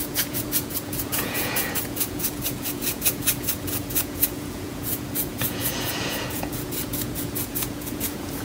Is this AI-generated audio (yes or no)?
yes